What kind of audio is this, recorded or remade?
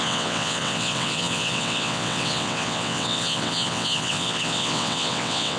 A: remade